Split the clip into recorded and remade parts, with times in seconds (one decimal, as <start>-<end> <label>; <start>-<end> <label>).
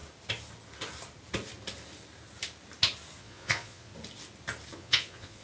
0.0-3.2 recorded; 3.2-3.9 remade; 3.9-4.7 recorded; 4.7-5.4 remade